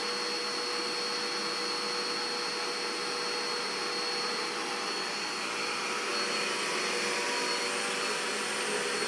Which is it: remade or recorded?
recorded